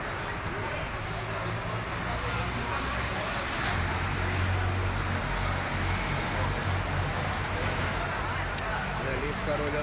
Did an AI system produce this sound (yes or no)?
no